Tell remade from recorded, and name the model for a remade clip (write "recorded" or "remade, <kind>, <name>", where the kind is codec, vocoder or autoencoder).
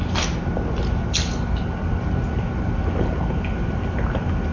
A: recorded